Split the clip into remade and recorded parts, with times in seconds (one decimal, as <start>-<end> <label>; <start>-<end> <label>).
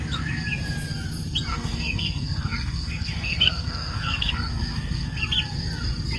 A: 0.0-1.5 recorded; 1.5-5.2 remade; 5.2-6.2 recorded